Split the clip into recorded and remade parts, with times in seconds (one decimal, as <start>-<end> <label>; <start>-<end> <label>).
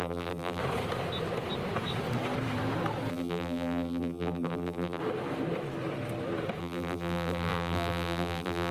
0.0-0.6 remade; 0.6-3.1 recorded; 3.1-5.0 remade; 5.0-6.6 recorded; 6.6-8.7 remade